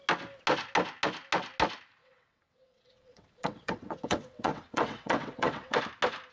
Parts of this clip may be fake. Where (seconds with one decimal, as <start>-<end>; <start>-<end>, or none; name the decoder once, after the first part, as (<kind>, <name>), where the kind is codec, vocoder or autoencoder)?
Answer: 2.0-5.8 (vocoder, WaveNeXt)